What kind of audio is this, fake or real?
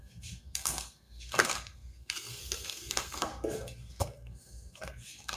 fake